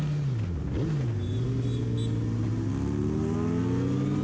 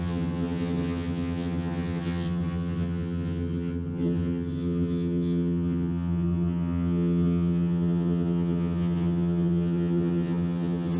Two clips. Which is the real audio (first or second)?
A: first